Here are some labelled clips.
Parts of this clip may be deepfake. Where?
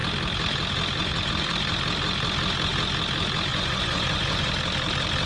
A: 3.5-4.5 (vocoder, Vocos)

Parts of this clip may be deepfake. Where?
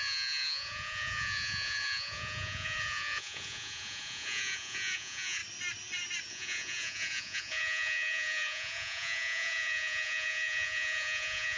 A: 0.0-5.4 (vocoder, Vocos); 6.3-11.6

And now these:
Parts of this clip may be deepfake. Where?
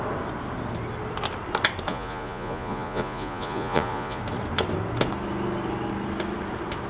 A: 1.9-4.2 (vocoder, Vocos)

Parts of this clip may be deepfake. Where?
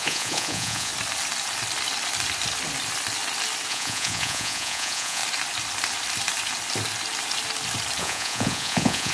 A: 0.0-0.9 (vocoder, Vocos); 3.7-5.2; 8.0-9.1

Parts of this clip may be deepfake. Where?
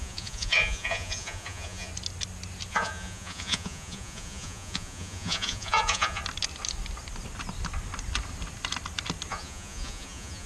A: 0.0-1.9 (vocoder, Vocos); 2.7-6.2; 9.3-10.5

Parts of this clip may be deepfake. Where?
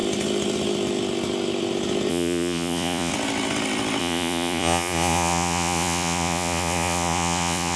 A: 2.1-3.1 (vocoder, Vocos); 4.0-7.8